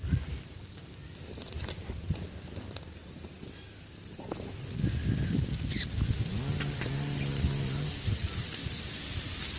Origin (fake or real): real